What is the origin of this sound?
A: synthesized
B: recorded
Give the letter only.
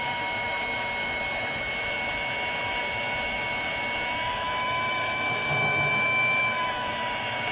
A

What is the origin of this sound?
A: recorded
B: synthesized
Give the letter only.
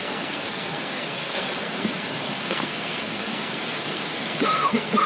B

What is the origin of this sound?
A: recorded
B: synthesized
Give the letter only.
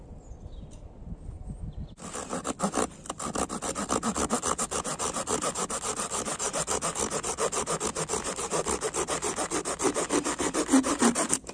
A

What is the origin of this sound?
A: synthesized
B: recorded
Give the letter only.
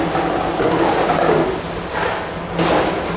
B